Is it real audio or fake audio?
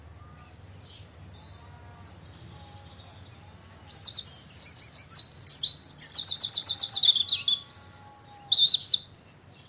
real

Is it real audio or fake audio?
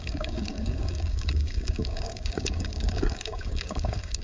fake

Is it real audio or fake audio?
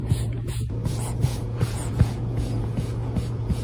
fake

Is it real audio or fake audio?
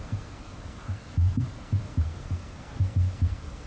fake